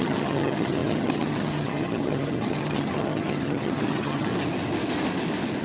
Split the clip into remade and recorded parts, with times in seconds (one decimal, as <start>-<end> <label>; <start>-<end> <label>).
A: 0.0-4.3 remade; 4.3-5.6 recorded